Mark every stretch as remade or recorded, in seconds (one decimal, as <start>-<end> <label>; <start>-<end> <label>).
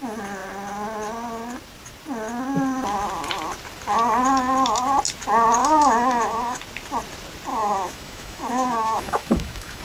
0.0-5.6 recorded; 5.6-6.6 remade; 6.6-7.5 recorded; 7.5-9.8 remade